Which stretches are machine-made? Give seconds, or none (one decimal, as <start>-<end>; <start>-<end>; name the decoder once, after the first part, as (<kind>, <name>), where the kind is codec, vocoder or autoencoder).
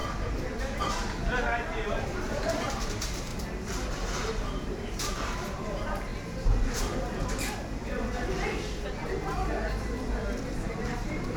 0.0-3.3 (vocoder, BigVGAN v2); 4.3-6.1; 10.8-11.4